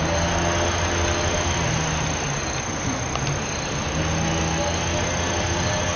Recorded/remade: recorded